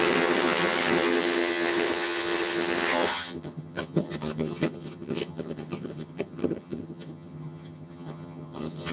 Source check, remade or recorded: remade